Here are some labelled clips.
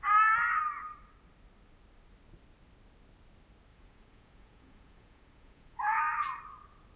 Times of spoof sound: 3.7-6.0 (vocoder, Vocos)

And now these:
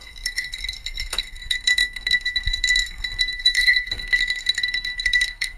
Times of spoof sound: 0.0-5.6 (codec, SNAC)

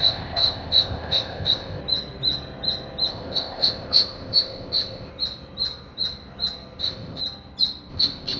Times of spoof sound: 0.0-1.8 (codec, ZipCodec); 3.1-5.1; 6.8-7.2; 7.9-8.4

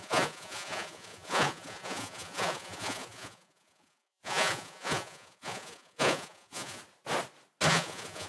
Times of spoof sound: 0.0-6.8 (vocoder, Vocos); 7.7-8.3

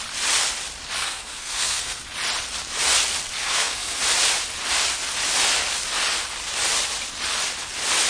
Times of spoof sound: 1.0-2.0 (codec, SNAC); 3.4-4.0